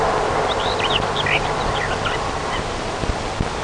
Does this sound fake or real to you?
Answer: real